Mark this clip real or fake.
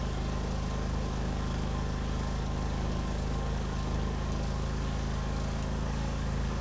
fake